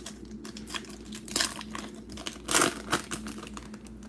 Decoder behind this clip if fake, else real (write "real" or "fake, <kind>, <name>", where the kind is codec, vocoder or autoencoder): real